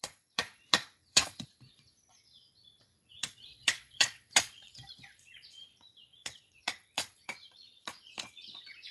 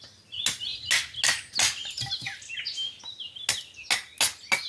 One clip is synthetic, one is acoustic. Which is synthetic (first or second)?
first